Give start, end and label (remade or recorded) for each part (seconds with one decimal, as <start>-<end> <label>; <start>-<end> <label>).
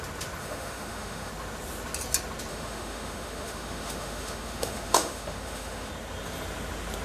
0.0-0.4 recorded; 0.4-1.3 remade; 1.3-2.5 recorded; 2.5-5.9 remade; 5.9-7.0 recorded